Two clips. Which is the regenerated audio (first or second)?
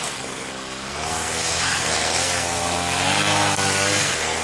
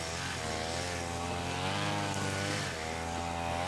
first